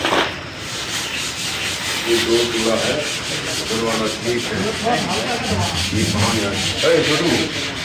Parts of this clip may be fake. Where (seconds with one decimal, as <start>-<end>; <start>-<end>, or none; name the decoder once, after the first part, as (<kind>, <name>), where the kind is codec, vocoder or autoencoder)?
none